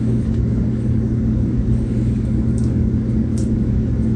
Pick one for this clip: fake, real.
fake